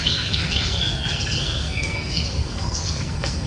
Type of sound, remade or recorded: remade